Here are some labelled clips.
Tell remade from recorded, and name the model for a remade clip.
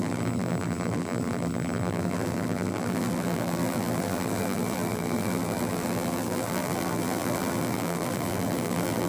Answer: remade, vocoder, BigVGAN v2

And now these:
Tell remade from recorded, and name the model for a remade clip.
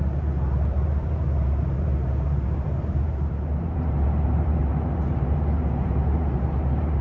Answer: remade, vocoder, BigVGAN v2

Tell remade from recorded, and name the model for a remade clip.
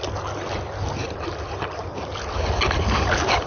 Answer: recorded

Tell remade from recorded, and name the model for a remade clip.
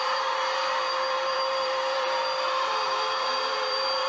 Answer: remade, vocoder, BigVGAN v2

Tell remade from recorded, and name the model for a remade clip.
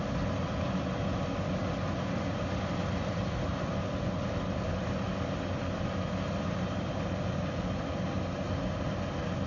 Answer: recorded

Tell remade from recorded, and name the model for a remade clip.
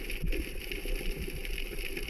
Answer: recorded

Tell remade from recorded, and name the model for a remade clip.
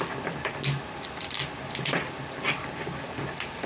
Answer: recorded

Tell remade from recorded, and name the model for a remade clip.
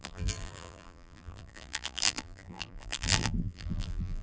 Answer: remade, vocoder, BigVGAN v2